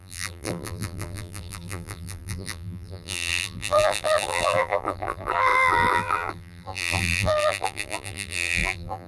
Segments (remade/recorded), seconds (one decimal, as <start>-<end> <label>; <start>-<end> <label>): 0.0-9.1 remade

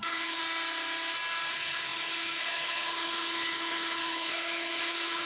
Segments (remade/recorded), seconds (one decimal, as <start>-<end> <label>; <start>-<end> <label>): 0.0-0.4 remade; 0.4-1.5 recorded; 1.5-5.3 remade

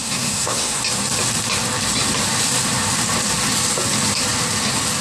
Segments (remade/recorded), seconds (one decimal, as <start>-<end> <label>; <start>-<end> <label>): 0.0-0.8 remade; 0.8-5.0 recorded

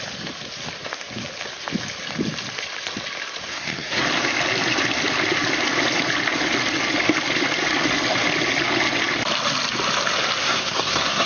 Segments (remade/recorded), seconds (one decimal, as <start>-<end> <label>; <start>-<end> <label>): 0.0-3.5 recorded; 3.5-4.0 remade; 4.0-10.4 recorded; 10.4-11.3 remade

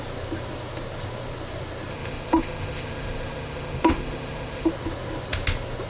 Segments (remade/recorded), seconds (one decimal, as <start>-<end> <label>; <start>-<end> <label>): 0.0-1.9 recorded; 1.9-4.7 remade; 4.7-5.9 recorded

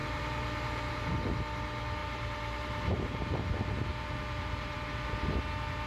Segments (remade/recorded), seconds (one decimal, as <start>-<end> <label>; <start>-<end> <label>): 0.0-1.1 remade; 1.1-2.0 recorded; 2.0-4.8 remade; 4.8-5.9 recorded

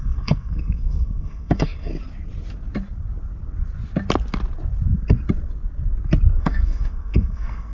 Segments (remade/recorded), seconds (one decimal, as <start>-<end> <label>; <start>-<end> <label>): 0.0-1.9 remade; 1.9-6.4 recorded; 6.4-7.7 remade

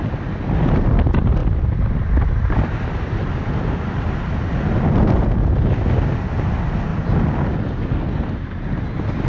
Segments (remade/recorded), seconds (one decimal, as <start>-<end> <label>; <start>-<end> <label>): 0.0-1.4 recorded; 1.4-3.3 remade; 3.3-6.9 recorded; 6.9-7.6 remade; 7.6-9.3 recorded